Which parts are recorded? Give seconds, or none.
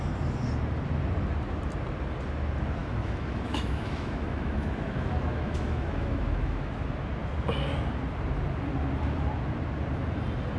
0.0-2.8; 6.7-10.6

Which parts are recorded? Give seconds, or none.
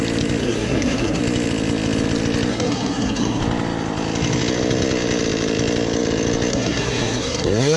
0.0-0.4; 1.2-2.5; 3.4-6.5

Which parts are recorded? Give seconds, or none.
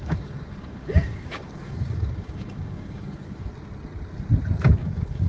3.5-4.8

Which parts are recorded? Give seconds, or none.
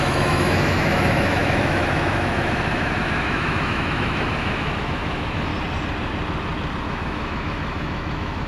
5.5-6.8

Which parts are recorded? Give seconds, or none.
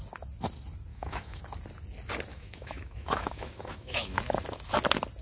0.0-0.9; 1.4-2.3; 4.2-5.2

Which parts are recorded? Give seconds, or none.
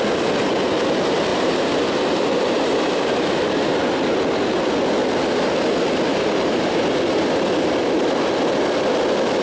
0.0-1.3; 3.7-6.1; 6.8-9.4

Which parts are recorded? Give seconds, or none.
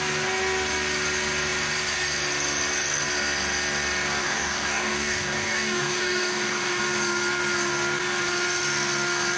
0.0-4.2; 6.8-9.4